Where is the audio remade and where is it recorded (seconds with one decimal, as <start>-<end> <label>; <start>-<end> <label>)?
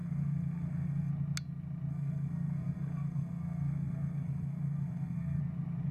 0.0-1.1 remade; 1.1-1.9 recorded; 1.9-5.4 remade; 5.4-5.9 recorded